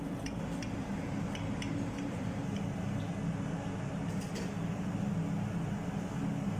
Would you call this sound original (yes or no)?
yes